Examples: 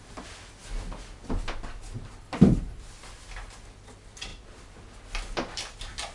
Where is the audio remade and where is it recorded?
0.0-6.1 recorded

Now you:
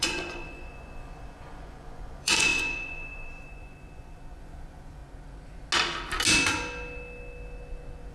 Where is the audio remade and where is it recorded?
0.0-5.0 remade; 5.0-8.1 recorded

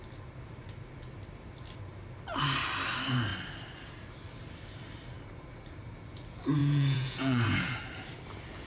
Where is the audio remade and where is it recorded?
0.0-6.6 recorded; 6.6-7.8 remade; 7.8-8.7 recorded

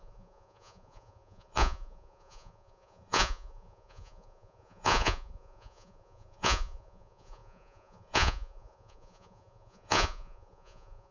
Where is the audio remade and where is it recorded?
0.0-11.1 remade

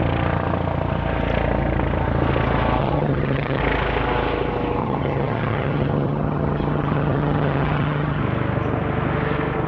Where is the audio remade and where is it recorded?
0.0-2.8 recorded; 2.8-3.6 remade; 3.6-4.8 recorded; 4.8-8.2 remade; 8.2-9.7 recorded

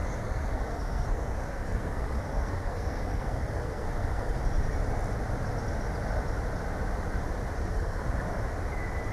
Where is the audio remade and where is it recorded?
0.0-4.4 remade; 4.4-7.6 recorded; 7.6-8.1 remade; 8.1-9.1 recorded

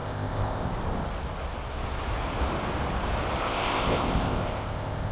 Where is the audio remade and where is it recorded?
0.0-0.7 remade; 0.7-3.4 recorded; 3.4-5.1 remade

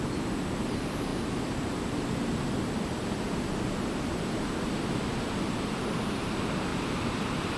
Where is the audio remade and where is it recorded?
0.0-6.7 recorded; 6.7-7.6 remade